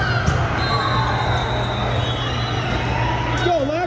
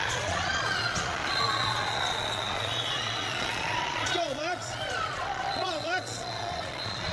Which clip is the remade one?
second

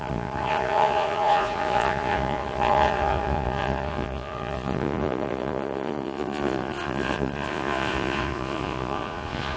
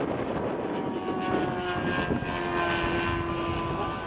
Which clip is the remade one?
first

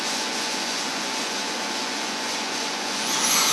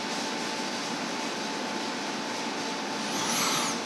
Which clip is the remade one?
first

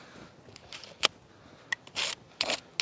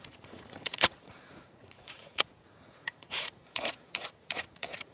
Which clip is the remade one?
second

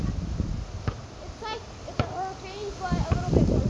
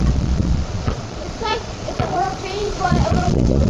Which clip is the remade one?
second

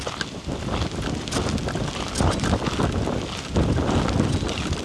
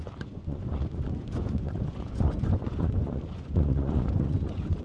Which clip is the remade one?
second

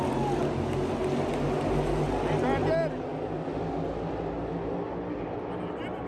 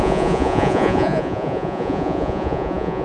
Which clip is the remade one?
second